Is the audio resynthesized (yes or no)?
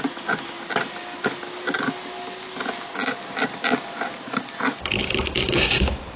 no